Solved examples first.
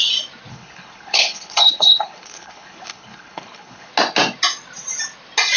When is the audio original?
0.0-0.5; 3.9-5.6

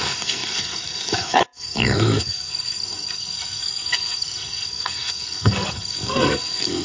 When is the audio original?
none

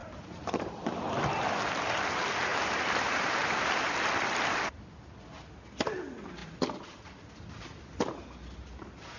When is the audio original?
1.0-2.5; 3.4-9.2

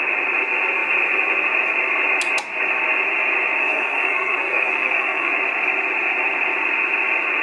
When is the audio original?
0.0-3.6; 5.3-7.4

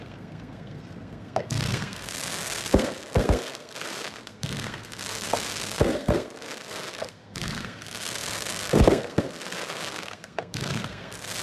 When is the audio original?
none

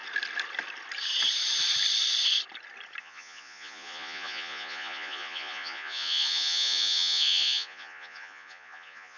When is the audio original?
0.0-3.0

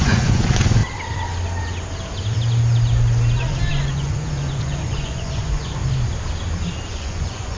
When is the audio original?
0.8-3.7; 5.8-6.9